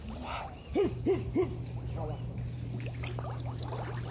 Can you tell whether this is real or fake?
real